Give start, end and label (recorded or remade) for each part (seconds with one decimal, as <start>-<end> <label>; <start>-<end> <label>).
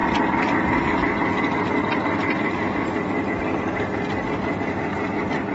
0.0-5.5 recorded